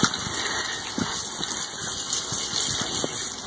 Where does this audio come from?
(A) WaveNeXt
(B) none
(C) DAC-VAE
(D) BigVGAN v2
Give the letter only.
B